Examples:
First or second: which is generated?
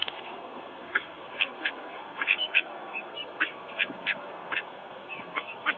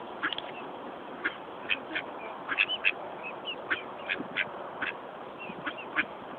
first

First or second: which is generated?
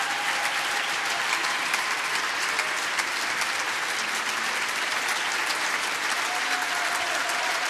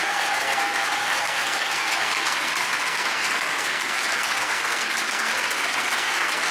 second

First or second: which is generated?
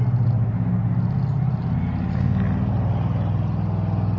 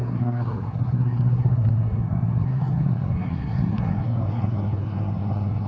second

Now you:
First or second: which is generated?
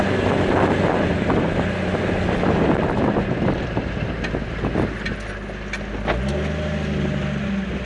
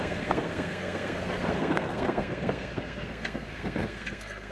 second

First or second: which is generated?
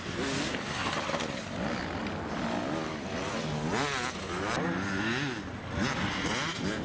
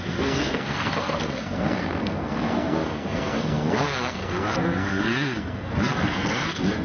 second